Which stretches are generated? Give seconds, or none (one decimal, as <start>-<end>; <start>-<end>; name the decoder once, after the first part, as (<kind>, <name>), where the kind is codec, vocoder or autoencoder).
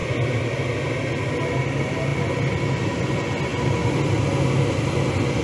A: none